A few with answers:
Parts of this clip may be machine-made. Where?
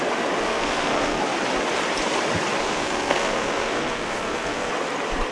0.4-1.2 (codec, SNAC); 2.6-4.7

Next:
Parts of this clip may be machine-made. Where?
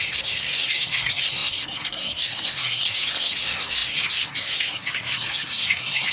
0.0-6.1 (codec, SNAC)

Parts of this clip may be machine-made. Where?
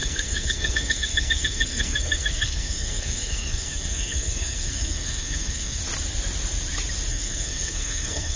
0.0-5.8 (codec, SNAC); 7.1-8.4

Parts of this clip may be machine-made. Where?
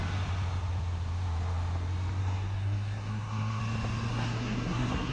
2.2-3.6 (codec, SNAC); 4.1-5.1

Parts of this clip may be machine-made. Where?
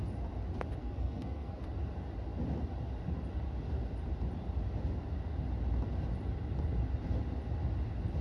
0.8-1.6 (codec, SNAC)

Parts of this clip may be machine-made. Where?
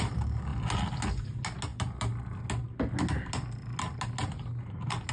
none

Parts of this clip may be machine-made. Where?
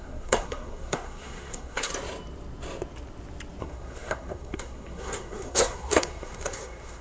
0.0-1.9 (codec, SNAC); 3.6-7.0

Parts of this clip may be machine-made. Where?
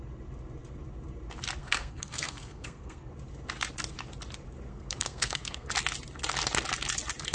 1.6-3.1 (codec, SNAC); 4.7-5.7